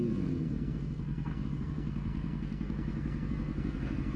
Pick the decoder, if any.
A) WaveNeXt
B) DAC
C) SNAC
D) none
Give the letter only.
C